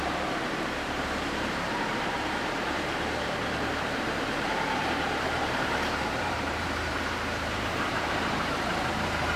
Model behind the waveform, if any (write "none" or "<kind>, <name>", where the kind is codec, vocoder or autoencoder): vocoder, BigVGAN v2